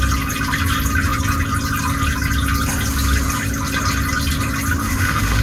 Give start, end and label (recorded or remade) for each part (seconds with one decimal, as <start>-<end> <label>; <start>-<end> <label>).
0.0-4.8 recorded; 4.8-5.4 remade